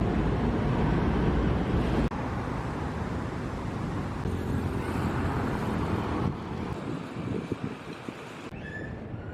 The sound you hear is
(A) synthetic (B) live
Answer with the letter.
B